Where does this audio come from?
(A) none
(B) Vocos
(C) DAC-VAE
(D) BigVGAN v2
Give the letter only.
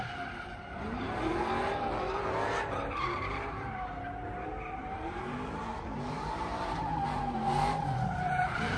D